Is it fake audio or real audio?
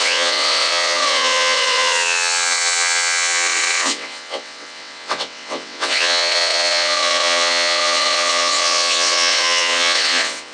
fake